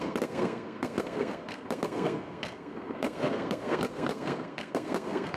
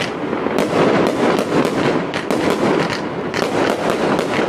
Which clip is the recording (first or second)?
second